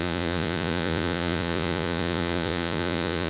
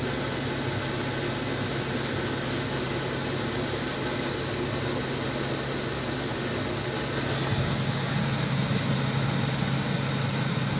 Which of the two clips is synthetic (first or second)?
first